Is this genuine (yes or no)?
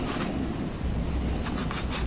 yes